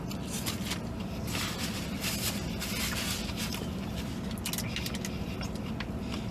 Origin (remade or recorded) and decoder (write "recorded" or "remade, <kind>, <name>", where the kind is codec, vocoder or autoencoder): recorded